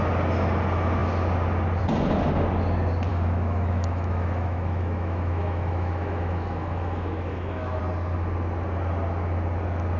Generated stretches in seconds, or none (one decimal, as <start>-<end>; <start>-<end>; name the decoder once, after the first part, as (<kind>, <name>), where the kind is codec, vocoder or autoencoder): 3.1-7.8 (autoencoder, DAC-VAE)